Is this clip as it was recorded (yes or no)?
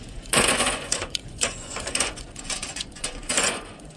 no